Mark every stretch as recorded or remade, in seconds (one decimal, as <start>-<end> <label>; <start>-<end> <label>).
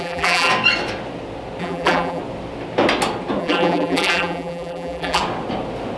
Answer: 0.0-0.5 remade; 0.5-1.6 recorded; 1.6-2.2 remade; 2.2-3.4 recorded; 3.4-5.2 remade; 5.2-6.0 recorded